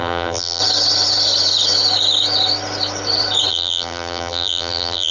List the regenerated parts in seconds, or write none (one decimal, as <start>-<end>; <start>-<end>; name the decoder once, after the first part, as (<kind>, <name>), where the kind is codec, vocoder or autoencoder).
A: 0.0-0.6 (vocoder, BigVGAN v2); 3.5-5.1